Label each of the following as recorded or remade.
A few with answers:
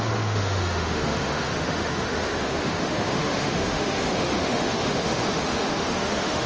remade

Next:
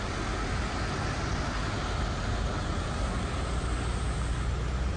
recorded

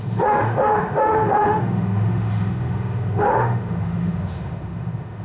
remade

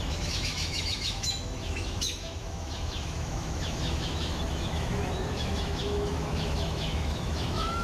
remade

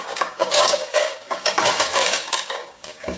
remade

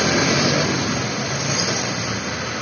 recorded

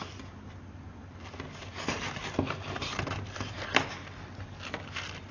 recorded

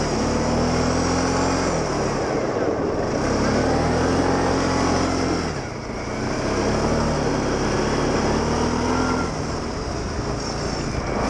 recorded